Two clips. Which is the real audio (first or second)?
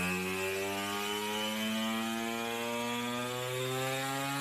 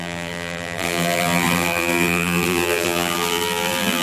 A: first